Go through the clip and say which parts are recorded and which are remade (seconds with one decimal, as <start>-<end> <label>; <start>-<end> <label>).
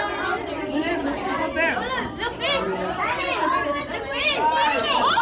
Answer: 0.0-4.6 recorded; 4.6-5.2 remade